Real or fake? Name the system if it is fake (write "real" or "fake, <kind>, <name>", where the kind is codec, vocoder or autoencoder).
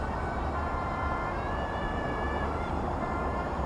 fake, vocoder, BigVGAN v2